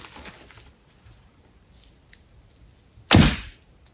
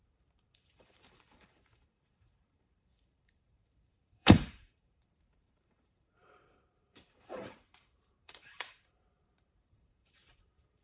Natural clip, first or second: first